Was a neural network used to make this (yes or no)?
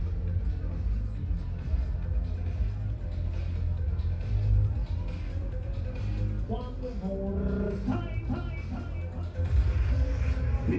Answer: no